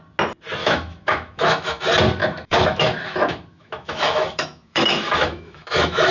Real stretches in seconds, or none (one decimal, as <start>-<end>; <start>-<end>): 0.0-0.6; 1.8-2.2